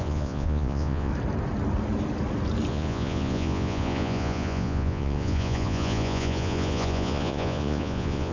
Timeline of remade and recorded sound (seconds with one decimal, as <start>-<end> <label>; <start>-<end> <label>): 0.0-1.1 remade; 1.1-2.7 recorded; 2.7-8.3 remade